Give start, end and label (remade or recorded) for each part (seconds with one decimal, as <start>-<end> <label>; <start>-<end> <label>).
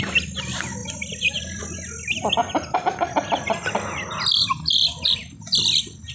0.0-0.8 recorded; 0.8-1.6 remade; 1.6-2.4 recorded; 2.4-5.6 remade; 5.6-6.1 recorded